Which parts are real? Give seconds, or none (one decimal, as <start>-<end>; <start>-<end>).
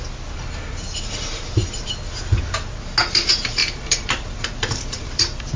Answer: 0.0-3.6